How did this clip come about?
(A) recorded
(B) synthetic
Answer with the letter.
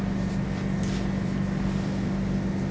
A